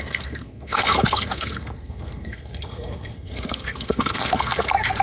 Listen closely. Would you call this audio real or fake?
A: fake